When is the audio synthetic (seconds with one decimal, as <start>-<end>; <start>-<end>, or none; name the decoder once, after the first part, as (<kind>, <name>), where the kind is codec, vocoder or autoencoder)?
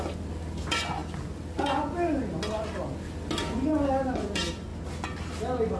none